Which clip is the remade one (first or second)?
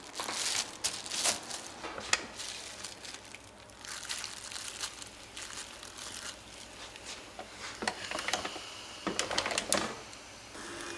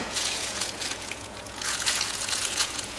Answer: second